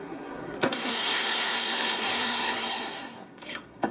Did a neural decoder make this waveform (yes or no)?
yes